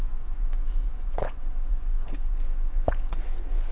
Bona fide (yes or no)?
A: no